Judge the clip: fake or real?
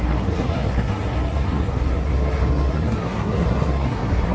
fake